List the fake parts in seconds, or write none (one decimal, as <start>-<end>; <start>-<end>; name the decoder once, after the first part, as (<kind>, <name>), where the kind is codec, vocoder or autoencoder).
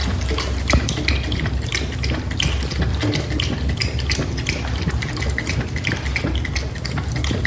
none